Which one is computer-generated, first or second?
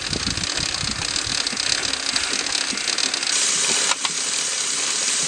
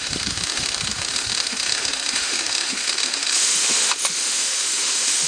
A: second